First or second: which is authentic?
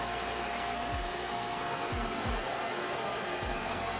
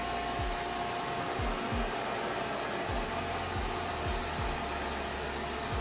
second